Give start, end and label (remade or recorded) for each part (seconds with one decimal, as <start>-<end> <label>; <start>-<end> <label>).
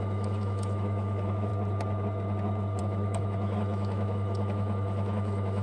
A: 0.0-1.5 remade; 1.5-2.8 recorded; 2.8-5.6 remade